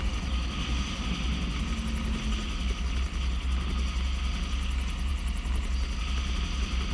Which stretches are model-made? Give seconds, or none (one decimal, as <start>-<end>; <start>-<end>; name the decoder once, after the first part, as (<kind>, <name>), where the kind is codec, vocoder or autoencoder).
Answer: none